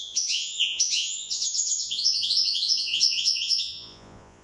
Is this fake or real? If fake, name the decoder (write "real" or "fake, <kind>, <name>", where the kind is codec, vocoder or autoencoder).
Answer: fake, vocoder, Vocos